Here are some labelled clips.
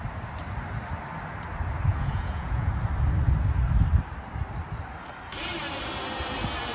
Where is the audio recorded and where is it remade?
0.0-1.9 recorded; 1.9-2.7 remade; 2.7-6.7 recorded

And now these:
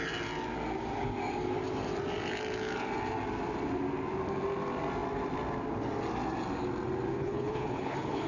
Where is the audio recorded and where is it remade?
0.0-7.1 recorded; 7.1-8.3 remade

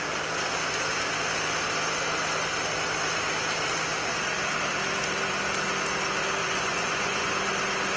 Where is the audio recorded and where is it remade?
0.0-6.4 recorded; 6.4-7.3 remade; 7.3-8.0 recorded

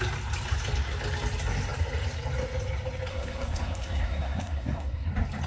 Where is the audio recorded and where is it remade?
0.0-3.1 recorded; 3.1-5.1 remade; 5.1-5.5 recorded

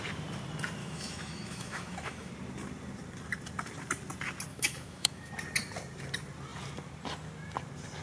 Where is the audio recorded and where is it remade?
0.0-0.8 recorded; 0.8-2.3 remade; 2.3-4.5 recorded; 4.5-5.3 remade; 5.3-8.0 recorded

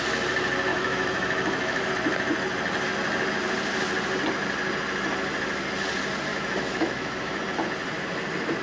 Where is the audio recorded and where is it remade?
0.0-0.7 recorded; 0.7-1.9 remade; 1.9-6.3 recorded; 6.3-7.4 remade; 7.4-8.6 recorded

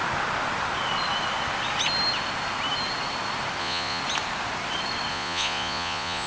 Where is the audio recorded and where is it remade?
0.0-3.6 recorded; 3.6-4.0 remade; 4.0-5.1 recorded; 5.1-6.3 remade

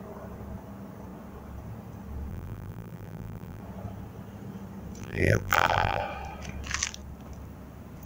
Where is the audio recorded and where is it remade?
0.0-2.3 recorded; 2.3-3.6 remade; 3.6-5.0 recorded; 5.0-6.0 remade; 6.0-8.1 recorded